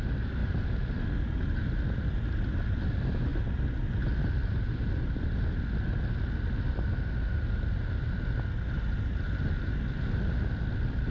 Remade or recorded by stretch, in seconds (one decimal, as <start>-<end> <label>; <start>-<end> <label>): 0.0-11.1 recorded